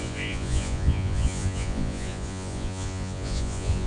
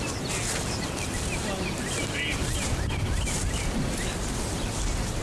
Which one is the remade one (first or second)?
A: first